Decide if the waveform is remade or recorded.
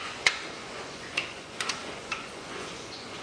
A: remade